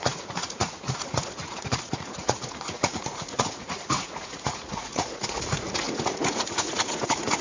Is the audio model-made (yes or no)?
yes